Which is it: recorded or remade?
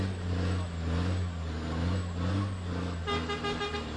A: recorded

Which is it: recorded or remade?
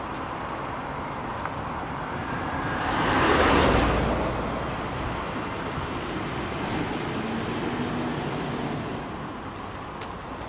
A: recorded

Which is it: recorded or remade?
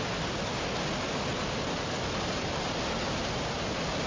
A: recorded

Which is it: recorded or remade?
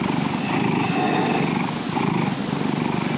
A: recorded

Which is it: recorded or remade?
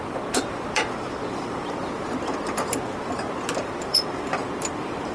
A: remade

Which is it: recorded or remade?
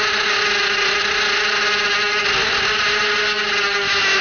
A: recorded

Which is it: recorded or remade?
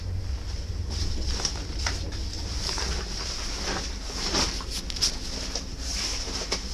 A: recorded